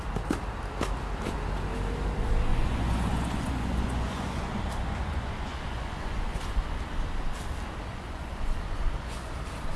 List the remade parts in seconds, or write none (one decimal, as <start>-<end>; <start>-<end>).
2.5-6.8; 7.9-9.3